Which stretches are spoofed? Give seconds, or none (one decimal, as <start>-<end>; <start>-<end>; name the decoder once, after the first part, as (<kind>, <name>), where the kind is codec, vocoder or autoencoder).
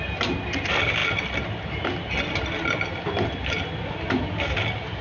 none